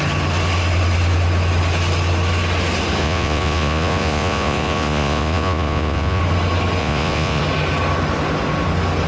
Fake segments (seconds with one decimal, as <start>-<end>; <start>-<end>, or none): 3.0-6.2; 6.8-7.4

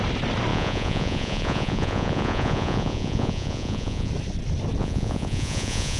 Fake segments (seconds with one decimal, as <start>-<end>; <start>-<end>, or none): 0.5-4.1; 4.8-6.0

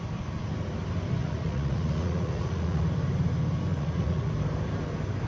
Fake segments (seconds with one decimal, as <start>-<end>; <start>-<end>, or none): 1.2-2.9; 3.7-4.3

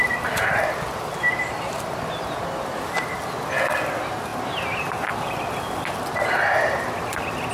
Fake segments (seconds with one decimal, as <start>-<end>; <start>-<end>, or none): none

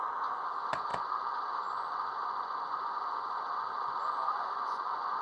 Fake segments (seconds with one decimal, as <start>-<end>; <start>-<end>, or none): 0.0-5.2

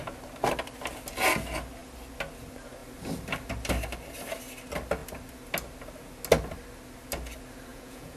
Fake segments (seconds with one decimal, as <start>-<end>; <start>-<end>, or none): 7.7-8.2

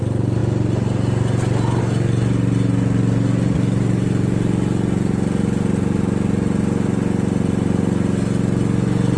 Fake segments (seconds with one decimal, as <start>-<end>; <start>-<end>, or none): none

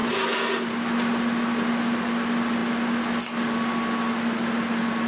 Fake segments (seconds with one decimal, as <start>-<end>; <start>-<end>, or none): none